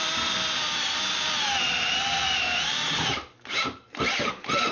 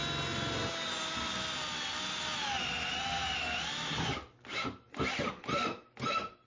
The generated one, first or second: first